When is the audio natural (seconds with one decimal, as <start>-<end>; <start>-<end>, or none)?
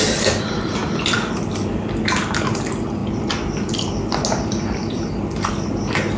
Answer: 0.0-6.2